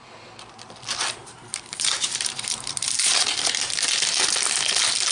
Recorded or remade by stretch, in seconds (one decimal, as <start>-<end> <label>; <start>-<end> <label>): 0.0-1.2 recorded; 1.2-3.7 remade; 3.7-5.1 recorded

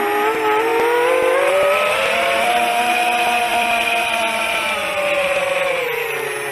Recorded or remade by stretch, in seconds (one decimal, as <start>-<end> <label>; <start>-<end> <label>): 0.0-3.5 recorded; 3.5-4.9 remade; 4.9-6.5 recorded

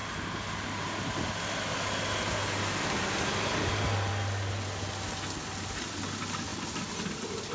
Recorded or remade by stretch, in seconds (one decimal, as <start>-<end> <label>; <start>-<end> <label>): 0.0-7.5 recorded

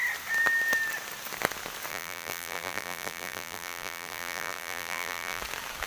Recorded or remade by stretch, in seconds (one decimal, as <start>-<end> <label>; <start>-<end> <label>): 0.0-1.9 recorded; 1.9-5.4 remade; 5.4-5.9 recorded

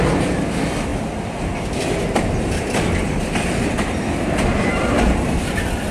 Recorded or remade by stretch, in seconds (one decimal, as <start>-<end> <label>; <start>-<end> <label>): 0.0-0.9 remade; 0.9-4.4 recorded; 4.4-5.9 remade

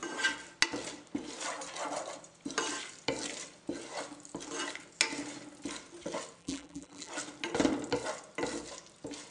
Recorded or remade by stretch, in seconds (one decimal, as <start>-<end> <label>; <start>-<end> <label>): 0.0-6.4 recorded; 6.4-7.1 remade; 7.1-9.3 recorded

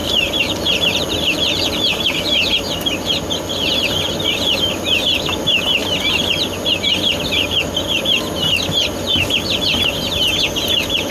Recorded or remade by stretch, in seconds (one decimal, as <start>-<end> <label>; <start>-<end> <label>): 0.0-2.2 remade; 2.2-11.1 recorded

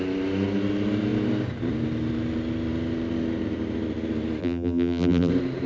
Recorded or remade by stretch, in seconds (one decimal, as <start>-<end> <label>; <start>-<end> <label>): 0.0-4.4 recorded; 4.4-5.3 remade; 5.3-5.7 recorded